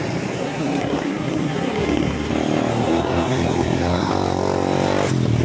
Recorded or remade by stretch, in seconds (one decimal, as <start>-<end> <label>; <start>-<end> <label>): 0.0-0.4 recorded; 0.4-2.3 remade; 2.3-2.7 recorded; 2.7-4.1 remade; 4.1-5.4 recorded

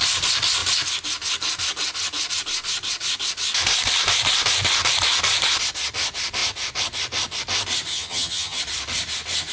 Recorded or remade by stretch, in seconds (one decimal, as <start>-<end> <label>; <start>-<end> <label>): 0.0-7.9 recorded; 7.9-8.6 remade; 8.6-9.5 recorded

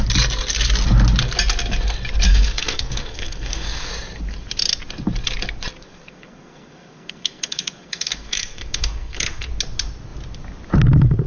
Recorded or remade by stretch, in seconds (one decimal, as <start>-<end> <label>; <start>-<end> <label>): 0.0-2.3 recorded; 2.3-3.9 remade; 3.9-5.8 recorded; 5.8-9.5 remade; 9.5-11.3 recorded

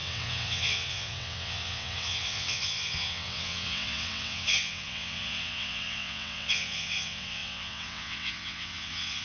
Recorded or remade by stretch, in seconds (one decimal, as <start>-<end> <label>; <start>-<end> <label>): 0.0-9.2 remade

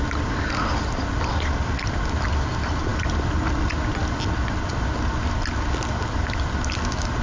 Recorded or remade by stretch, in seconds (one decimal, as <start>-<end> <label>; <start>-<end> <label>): 0.0-7.2 recorded

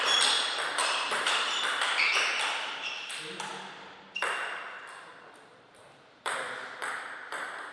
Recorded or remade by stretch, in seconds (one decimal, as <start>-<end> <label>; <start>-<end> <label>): 0.0-0.8 recorded; 0.8-1.6 remade; 1.6-5.5 recorded; 5.5-7.0 remade; 7.0-7.7 recorded

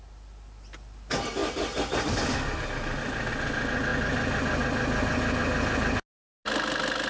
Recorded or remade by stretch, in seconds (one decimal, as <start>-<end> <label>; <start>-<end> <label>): 0.0-7.1 recorded